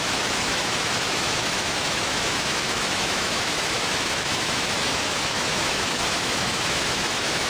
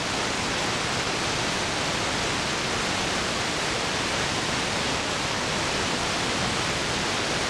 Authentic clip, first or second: second